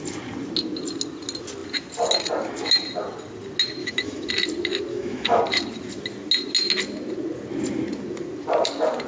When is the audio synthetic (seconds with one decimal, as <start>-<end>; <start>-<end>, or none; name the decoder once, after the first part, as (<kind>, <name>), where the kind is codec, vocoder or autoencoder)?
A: 3.8-4.3 (autoencoder, DAC-VAE); 4.9-5.4